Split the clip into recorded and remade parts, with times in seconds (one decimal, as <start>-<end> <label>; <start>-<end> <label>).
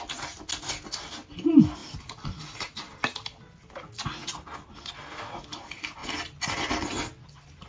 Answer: 0.0-7.7 recorded